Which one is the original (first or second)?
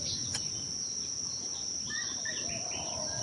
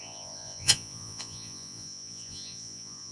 first